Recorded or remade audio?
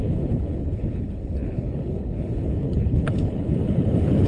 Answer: remade